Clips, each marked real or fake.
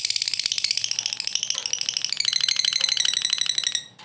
real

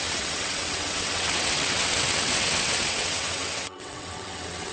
fake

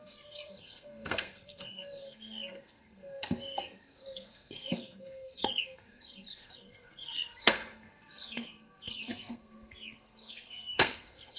fake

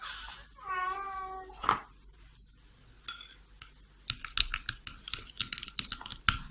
real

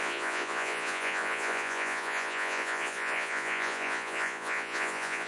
fake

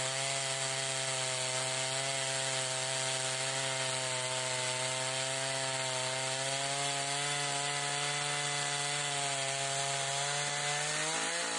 real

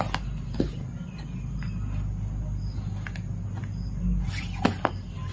real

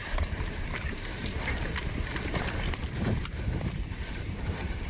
fake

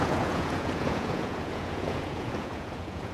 fake